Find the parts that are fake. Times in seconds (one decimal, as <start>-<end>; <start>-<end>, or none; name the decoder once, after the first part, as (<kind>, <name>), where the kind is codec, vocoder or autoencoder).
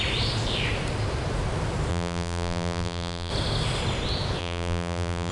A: 1.9-3.3 (vocoder, BigVGAN v2); 4.4-5.3